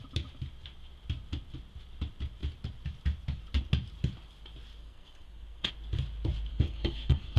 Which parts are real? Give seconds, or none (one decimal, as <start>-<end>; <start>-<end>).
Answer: 0.0-4.8; 5.7-6.5

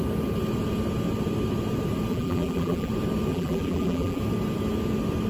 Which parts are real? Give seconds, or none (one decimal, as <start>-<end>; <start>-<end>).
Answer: 0.0-2.1; 2.9-3.3; 4.2-5.3

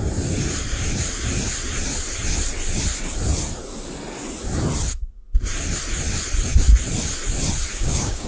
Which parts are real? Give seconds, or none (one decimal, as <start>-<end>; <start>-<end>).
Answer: 0.0-7.7